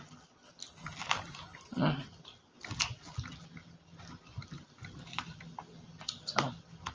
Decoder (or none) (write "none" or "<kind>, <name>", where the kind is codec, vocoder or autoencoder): none